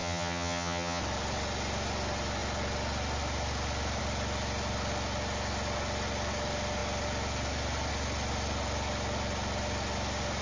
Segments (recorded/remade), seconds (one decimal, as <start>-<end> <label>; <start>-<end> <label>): 0.0-1.0 remade; 1.0-10.4 recorded